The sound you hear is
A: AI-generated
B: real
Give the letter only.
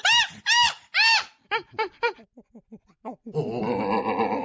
B